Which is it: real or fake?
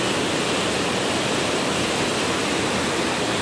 real